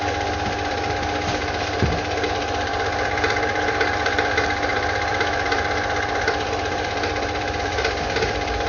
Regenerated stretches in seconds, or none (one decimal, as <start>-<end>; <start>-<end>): 0.0-1.4; 2.3-8.7